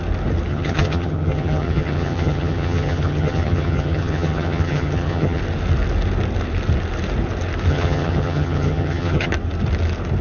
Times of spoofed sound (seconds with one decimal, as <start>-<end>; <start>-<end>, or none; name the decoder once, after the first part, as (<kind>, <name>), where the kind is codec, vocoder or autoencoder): 0.5-5.4 (vocoder, HiFi-GAN); 7.7-9.3